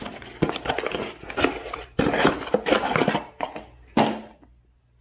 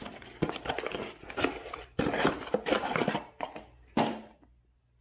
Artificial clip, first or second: second